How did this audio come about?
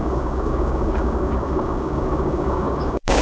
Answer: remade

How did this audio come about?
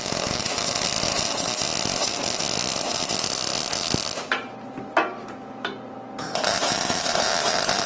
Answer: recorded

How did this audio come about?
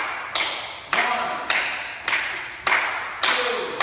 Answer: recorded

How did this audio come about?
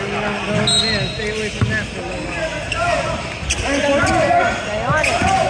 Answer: recorded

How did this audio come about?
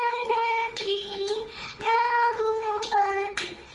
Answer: remade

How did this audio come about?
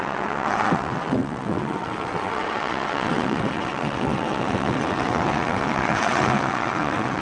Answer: remade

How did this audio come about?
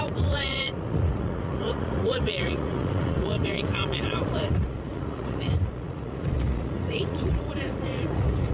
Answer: remade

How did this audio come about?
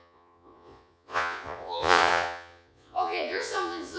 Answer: remade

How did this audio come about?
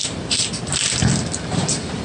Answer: recorded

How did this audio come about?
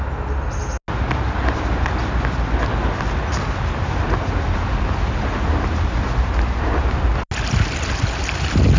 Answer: recorded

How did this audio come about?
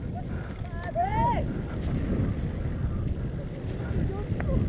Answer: recorded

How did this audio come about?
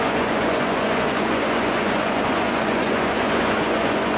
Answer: remade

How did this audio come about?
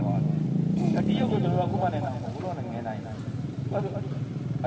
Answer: recorded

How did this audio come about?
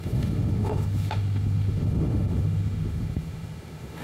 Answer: remade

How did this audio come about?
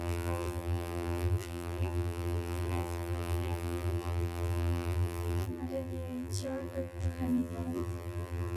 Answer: remade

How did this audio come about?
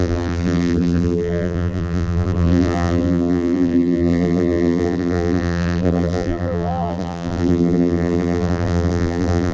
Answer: remade